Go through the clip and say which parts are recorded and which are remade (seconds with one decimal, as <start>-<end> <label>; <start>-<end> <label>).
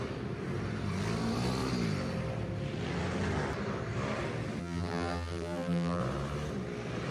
0.0-4.6 recorded; 4.6-6.0 remade; 6.0-7.1 recorded